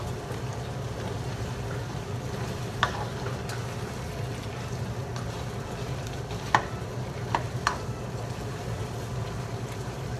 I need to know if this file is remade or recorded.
recorded